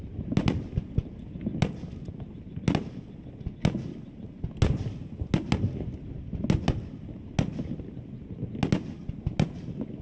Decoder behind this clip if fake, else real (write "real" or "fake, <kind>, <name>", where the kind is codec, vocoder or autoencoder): real